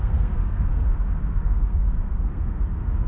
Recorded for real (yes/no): no